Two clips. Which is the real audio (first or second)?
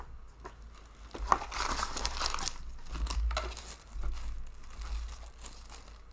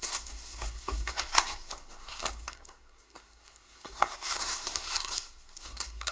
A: first